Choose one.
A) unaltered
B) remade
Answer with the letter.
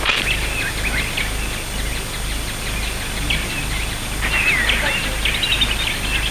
A